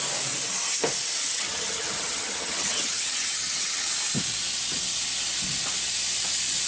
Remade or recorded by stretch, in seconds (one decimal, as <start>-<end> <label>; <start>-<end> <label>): 0.0-1.2 recorded; 1.2-3.9 remade; 3.9-6.7 recorded